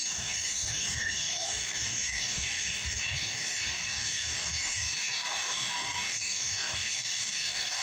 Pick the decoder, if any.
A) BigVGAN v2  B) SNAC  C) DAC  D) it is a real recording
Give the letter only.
C